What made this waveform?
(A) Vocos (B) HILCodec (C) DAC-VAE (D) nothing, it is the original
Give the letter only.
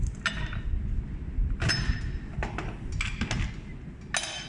D